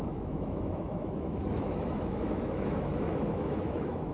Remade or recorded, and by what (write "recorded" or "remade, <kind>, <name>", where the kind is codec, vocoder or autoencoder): remade, autoencoder, DAC-VAE